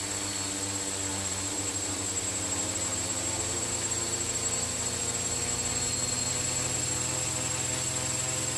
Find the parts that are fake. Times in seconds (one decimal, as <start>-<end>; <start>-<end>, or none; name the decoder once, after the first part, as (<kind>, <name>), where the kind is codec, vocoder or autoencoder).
1.1-5.0 (vocoder, BigVGAN v2)